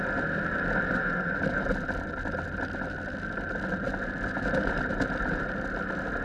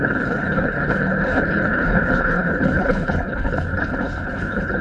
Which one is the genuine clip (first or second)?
first